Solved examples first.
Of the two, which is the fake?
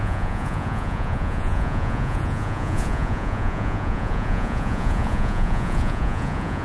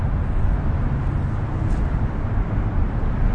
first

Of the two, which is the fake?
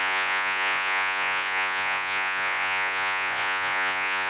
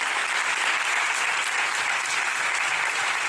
first